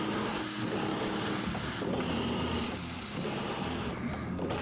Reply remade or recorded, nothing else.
recorded